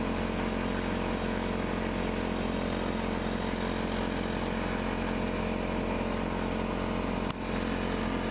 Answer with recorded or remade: recorded